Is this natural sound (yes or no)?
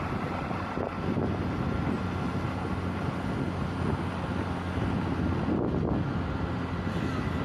yes